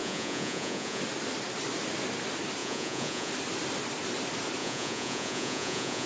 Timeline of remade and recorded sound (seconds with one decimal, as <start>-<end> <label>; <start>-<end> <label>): 0.0-1.0 remade; 1.0-2.6 recorded; 2.6-3.3 remade; 3.3-4.6 recorded; 4.6-6.1 remade